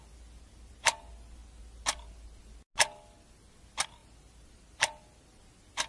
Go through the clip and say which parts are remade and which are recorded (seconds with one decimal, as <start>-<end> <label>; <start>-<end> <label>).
0.0-5.9 recorded